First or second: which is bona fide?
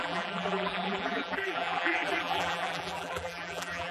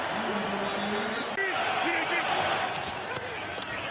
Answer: second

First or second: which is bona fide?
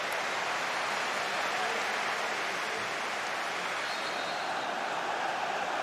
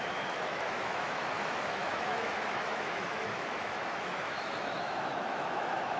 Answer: first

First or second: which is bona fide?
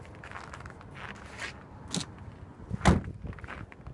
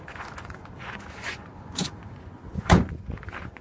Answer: first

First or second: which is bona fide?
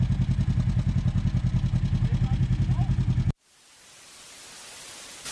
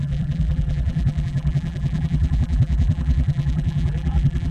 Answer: first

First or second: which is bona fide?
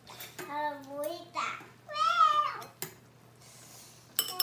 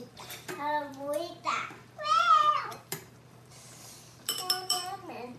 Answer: first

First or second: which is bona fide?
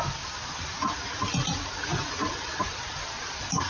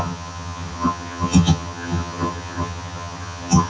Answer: first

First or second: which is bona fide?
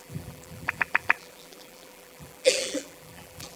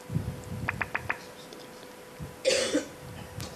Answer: second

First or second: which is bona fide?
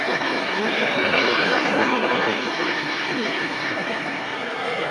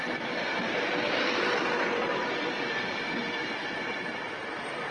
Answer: second